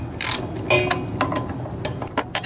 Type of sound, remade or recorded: recorded